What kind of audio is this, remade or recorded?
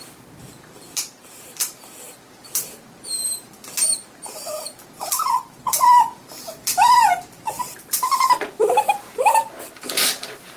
remade